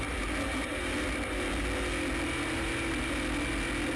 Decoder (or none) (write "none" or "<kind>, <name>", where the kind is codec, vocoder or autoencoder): none